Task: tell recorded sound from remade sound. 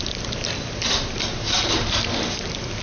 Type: recorded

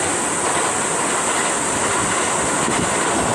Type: recorded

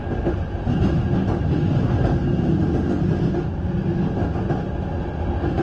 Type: recorded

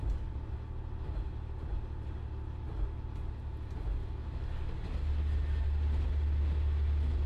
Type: recorded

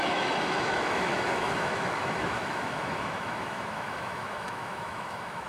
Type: remade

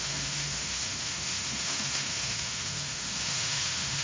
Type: remade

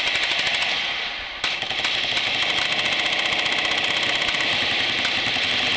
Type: recorded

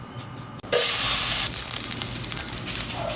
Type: recorded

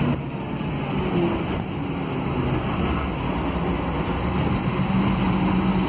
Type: recorded